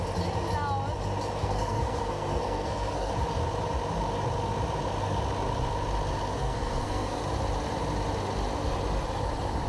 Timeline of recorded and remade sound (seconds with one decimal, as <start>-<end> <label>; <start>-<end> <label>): 0.0-1.4 recorded; 1.4-3.1 remade; 3.1-6.4 recorded; 6.4-7.2 remade; 7.2-9.7 recorded